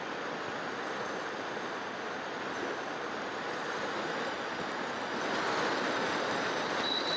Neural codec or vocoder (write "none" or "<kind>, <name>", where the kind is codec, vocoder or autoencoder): none